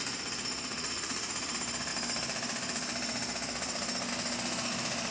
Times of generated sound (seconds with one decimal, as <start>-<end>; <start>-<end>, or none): 0.7-1.5